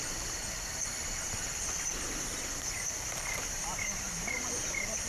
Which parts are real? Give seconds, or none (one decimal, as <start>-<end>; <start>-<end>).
none